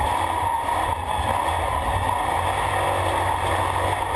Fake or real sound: real